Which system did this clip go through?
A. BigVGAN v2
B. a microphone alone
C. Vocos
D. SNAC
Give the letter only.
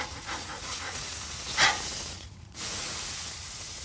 C